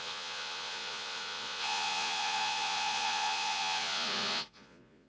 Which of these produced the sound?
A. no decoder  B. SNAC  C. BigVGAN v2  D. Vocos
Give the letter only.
D